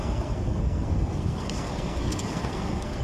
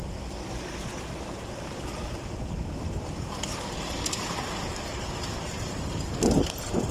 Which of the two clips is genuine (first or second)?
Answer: second